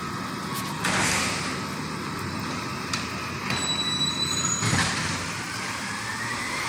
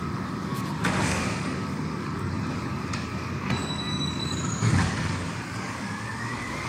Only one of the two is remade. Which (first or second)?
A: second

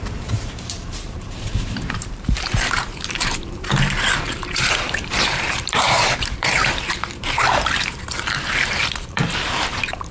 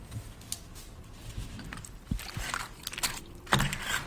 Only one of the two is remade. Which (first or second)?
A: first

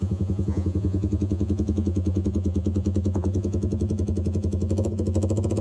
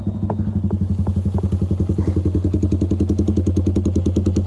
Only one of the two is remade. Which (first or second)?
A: first